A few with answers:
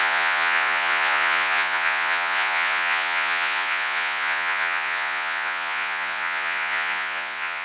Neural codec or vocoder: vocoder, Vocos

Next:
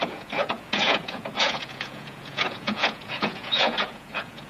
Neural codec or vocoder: vocoder, Vocos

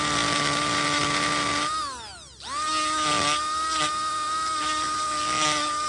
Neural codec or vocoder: none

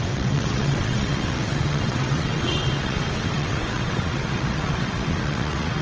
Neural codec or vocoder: vocoder, WaveNeXt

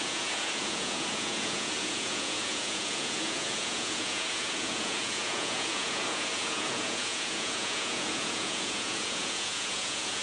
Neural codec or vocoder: vocoder, Vocos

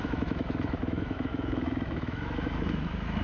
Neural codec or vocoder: autoencoder, DAC-VAE